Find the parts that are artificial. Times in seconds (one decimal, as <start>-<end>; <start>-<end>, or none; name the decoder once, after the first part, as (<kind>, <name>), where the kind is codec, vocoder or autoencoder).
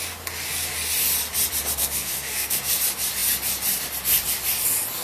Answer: 1.8-2.7 (codec, SNAC)